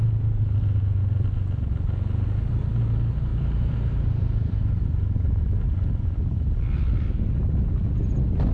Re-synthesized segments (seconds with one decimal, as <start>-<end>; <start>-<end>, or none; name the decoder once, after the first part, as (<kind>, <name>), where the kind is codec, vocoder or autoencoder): 3.3-5.5 (vocoder, BigVGAN v2)